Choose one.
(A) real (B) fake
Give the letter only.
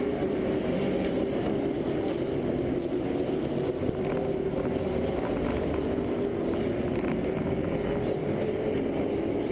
A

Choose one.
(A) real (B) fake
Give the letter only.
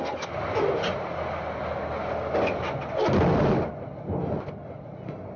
A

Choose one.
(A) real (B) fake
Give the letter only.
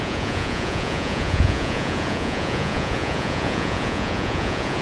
B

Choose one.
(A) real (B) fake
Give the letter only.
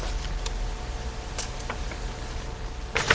A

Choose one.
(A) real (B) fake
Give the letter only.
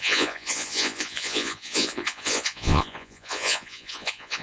B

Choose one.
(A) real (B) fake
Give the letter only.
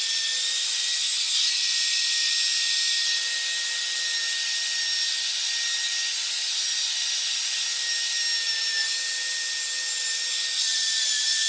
A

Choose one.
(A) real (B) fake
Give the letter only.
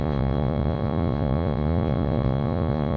B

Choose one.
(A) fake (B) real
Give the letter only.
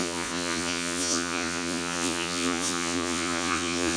A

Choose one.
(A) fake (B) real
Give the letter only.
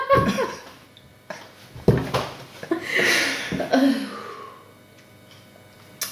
B